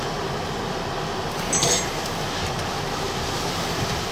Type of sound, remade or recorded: recorded